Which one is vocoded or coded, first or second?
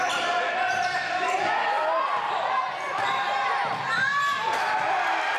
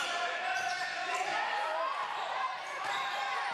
second